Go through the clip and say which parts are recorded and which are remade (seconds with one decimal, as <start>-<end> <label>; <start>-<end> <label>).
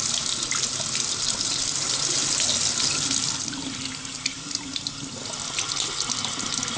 0.0-6.8 recorded